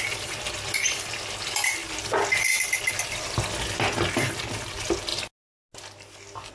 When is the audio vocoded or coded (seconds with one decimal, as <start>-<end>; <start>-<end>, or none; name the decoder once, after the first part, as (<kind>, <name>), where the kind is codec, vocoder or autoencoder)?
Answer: none